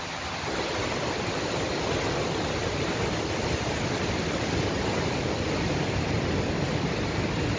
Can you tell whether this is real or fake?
real